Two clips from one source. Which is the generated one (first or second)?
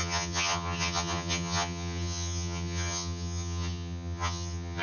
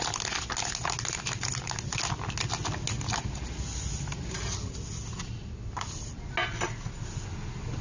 first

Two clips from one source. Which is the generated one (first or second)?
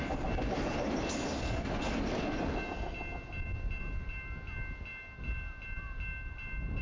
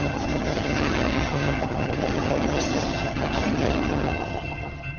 second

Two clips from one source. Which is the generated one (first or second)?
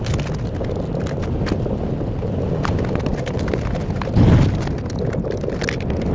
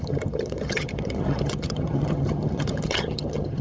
second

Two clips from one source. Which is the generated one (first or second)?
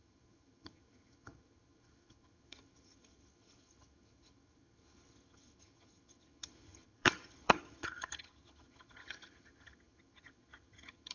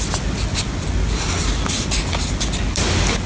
first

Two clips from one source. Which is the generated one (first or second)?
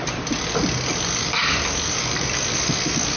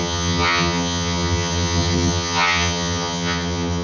second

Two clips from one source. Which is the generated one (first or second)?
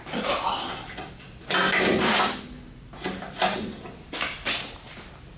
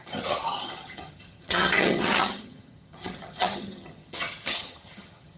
second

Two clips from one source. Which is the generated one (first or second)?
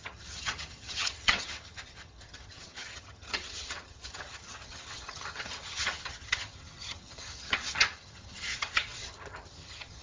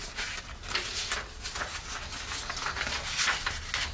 first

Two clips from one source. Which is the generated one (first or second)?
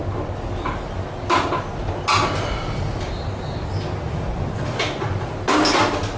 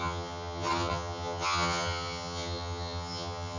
second